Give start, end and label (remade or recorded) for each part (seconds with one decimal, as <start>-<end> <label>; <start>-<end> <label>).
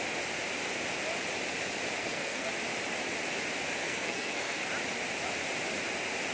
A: 0.0-2.0 recorded; 2.0-2.5 remade; 2.5-3.8 recorded; 3.8-4.7 remade; 4.7-6.3 recorded